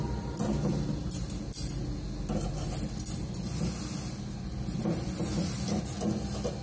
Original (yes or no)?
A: yes